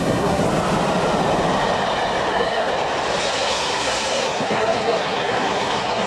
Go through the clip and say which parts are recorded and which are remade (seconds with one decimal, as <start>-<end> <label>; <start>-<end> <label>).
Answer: 0.0-0.4 remade; 0.4-2.3 recorded; 2.3-2.7 remade; 2.7-3.2 recorded; 3.2-6.1 remade